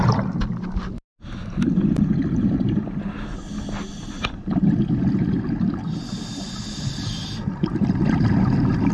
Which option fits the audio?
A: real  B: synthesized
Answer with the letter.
A